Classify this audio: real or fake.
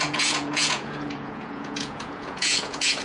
fake